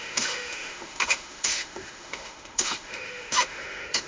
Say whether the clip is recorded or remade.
remade